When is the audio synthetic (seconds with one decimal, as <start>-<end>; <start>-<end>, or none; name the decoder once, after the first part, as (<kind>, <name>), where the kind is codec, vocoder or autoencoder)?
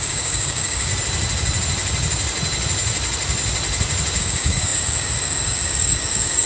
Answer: 0.0-0.9 (codec, DAC); 4.2-6.5